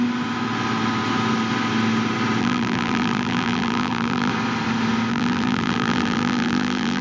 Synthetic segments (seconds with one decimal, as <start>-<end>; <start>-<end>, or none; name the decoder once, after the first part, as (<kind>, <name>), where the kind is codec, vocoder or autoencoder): 2.4-4.3 (vocoder, BigVGAN v2); 5.1-7.0